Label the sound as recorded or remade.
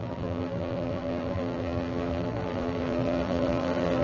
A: remade